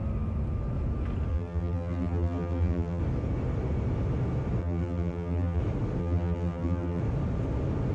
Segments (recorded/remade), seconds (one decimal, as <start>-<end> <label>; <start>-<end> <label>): 0.0-1.3 recorded; 1.3-3.0 remade; 3.0-4.6 recorded; 4.6-5.6 remade; 5.6-6.0 recorded; 6.0-7.0 remade; 7.0-7.9 recorded